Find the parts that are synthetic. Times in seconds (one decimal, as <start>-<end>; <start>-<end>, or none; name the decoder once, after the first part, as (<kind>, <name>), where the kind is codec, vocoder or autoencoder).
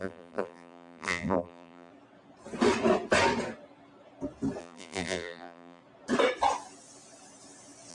0.0-1.9 (vocoder, BigVGAN v2); 4.6-5.8